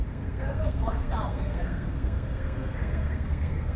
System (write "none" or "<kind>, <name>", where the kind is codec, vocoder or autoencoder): codec, SNAC